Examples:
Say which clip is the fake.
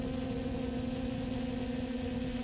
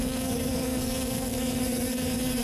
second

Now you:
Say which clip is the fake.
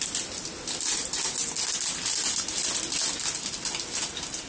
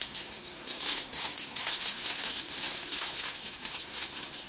second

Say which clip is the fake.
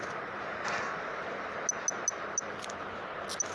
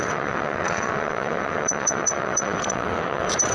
second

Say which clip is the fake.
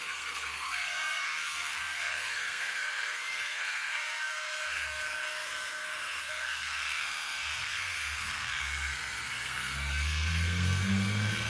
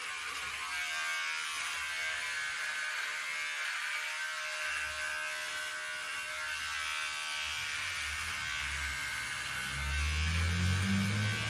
first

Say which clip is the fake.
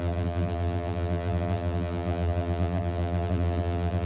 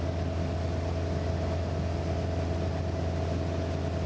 first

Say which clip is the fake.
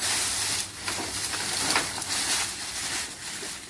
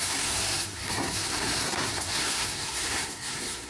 second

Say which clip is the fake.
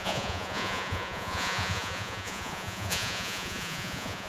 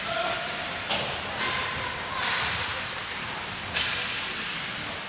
first